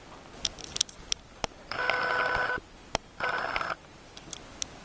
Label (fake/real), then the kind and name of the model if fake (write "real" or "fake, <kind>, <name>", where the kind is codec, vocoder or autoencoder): real